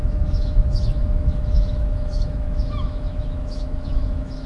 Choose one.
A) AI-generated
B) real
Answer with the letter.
A